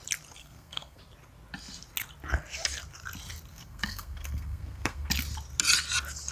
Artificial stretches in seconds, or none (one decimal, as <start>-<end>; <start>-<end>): 0.4-1.0; 3.5-5.1